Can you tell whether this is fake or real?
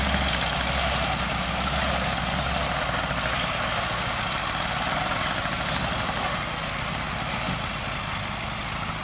real